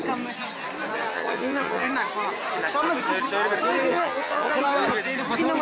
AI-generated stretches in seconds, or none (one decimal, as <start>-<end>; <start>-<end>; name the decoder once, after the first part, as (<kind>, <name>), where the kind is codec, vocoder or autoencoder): 1.1-1.9 (vocoder, HiFi-GAN); 3.9-4.5